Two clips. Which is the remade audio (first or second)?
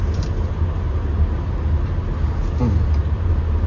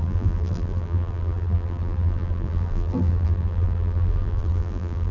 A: second